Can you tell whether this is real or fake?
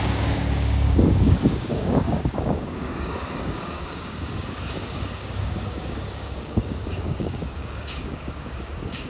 fake